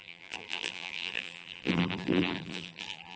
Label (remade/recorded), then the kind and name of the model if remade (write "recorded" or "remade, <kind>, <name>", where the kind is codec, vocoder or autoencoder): remade, vocoder, BigVGAN v2